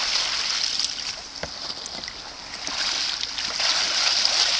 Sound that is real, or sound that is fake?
real